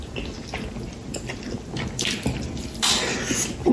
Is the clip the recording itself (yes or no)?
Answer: yes